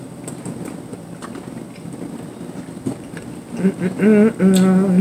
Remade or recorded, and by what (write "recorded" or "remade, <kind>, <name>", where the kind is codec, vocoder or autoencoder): recorded